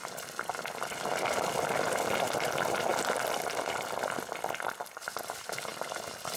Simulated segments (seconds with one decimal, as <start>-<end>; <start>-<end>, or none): none